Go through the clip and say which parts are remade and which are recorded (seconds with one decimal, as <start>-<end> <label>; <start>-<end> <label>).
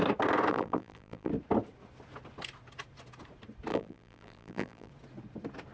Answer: 0.0-0.5 recorded; 0.5-1.3 remade; 1.3-3.7 recorded; 3.7-4.9 remade; 4.9-5.7 recorded